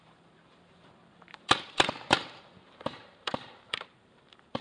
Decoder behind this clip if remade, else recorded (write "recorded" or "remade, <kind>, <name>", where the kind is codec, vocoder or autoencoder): remade, vocoder, BigVGAN v2